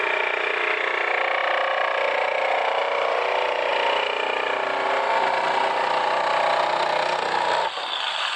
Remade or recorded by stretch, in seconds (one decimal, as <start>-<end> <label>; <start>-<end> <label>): 0.0-8.4 recorded